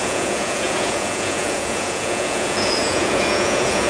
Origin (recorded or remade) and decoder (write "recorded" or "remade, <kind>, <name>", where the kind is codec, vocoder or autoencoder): remade, vocoder, Vocos